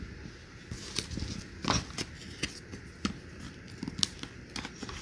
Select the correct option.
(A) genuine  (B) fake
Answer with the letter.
A